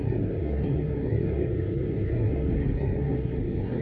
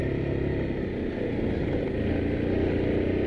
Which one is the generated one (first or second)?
first